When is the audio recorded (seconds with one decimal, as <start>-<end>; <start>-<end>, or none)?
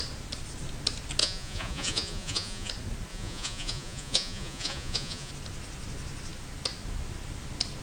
0.0-1.2; 2.7-3.1; 5.3-7.8